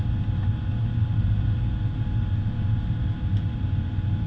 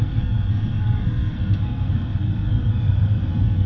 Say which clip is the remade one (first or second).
second